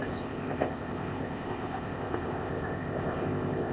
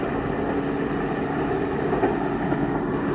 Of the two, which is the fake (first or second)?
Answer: first